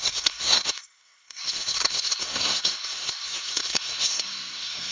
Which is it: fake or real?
fake